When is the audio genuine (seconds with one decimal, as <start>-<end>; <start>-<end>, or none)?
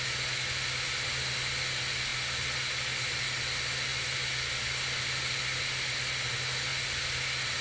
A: 0.0-7.6